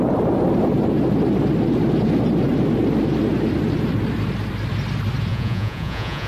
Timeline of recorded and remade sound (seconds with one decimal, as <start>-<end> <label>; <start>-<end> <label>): 0.0-5.3 recorded; 5.3-6.3 remade